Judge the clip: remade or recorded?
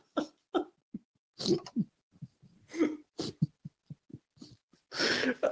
recorded